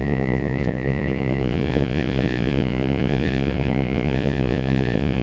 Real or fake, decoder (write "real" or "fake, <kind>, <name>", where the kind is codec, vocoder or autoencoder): fake, vocoder, Vocos